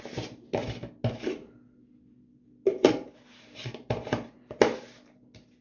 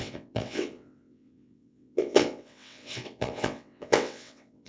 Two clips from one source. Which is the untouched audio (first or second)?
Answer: first